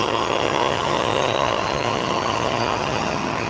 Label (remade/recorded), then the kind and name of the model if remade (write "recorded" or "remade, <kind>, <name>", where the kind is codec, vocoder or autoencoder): remade, vocoder, HiFi-GAN